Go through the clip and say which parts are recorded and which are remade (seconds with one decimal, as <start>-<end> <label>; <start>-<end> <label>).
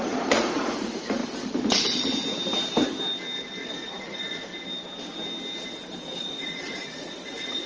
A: 0.0-1.2 remade; 1.2-3.6 recorded; 3.6-4.5 remade; 4.5-6.0 recorded; 6.0-7.7 remade